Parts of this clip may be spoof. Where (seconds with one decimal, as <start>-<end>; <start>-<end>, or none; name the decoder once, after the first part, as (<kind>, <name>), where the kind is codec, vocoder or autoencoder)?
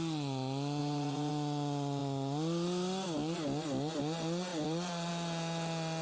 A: 0.8-1.3 (vocoder, Vocos); 4.5-5.1